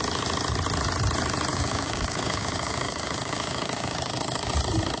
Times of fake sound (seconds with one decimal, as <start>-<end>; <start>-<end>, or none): 1.5-4.5

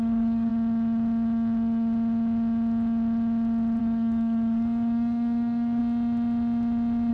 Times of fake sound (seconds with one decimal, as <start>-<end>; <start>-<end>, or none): 0.0-0.5; 3.8-5.8

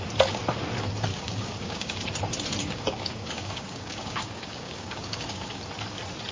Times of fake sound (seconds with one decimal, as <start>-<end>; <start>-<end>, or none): 1.1-2.0; 2.6-5.6

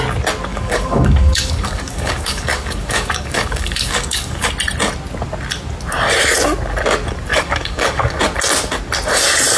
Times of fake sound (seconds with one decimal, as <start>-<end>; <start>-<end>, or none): 0.5-4.5; 7.3-8.2

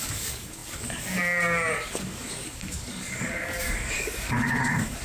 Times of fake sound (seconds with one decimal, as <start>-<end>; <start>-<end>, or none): 0.0-5.0

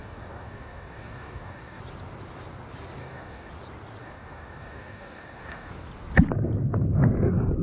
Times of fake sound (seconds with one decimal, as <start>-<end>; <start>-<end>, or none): 0.0-1.8; 3.0-3.5; 4.0-5.7

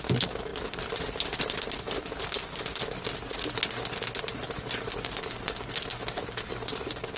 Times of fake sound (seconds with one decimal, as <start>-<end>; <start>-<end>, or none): none

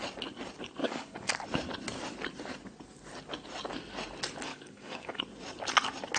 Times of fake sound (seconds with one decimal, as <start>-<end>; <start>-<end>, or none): 0.8-1.3; 4.5-5.2